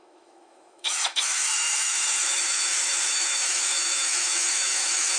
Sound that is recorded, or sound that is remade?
remade